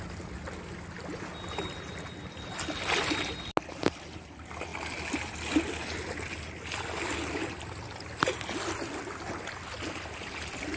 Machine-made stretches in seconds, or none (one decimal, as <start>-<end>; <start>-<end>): none